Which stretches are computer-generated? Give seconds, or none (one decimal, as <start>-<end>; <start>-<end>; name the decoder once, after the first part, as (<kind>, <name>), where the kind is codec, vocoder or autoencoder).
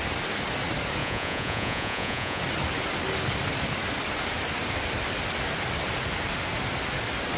1.0-2.4 (vocoder, Vocos)